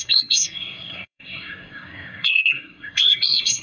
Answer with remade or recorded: remade